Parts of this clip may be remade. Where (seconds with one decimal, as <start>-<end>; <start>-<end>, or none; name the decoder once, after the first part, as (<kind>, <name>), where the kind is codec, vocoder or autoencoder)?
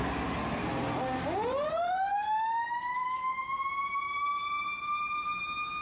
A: none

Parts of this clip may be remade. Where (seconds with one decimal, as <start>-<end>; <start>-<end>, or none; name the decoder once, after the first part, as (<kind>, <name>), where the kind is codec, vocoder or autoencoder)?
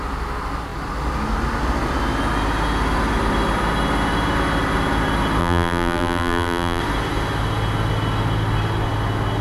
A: 5.4-6.8 (vocoder, BigVGAN v2)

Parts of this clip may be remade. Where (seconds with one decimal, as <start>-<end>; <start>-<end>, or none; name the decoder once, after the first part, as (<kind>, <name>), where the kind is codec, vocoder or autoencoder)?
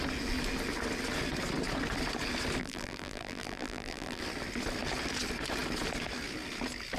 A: 2.6-4.2 (vocoder, BigVGAN v2)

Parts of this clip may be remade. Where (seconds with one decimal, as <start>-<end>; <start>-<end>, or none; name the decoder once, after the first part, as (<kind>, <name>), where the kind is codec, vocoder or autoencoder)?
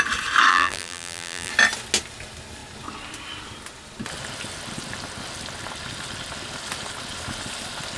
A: 0.5-1.5 (vocoder, BigVGAN v2)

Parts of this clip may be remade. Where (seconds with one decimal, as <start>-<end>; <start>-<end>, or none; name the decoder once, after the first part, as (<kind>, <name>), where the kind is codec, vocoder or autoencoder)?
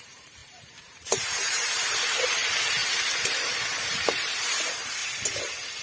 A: 0.0-2.8 (vocoder, BigVGAN v2); 3.3-5.0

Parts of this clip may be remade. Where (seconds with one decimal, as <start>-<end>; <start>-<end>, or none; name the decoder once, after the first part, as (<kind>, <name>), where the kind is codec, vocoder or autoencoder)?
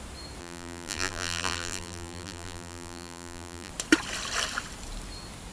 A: 0.4-3.7 (vocoder, BigVGAN v2)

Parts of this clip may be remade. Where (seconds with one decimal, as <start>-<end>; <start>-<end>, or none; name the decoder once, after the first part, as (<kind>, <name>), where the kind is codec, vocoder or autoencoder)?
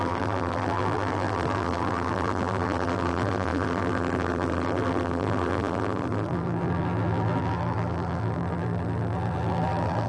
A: 0.0-10.1 (vocoder, BigVGAN v2)